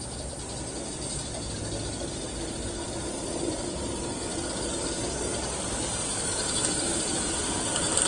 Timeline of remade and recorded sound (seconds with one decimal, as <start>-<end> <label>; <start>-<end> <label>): 0.0-8.1 recorded